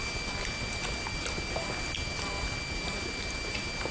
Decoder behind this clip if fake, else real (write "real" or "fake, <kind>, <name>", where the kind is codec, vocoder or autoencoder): real